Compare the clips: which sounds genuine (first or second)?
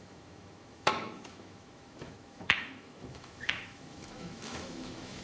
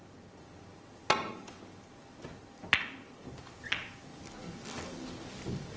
second